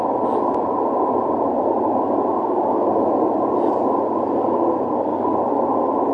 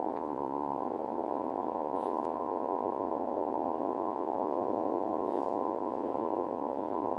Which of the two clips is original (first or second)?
first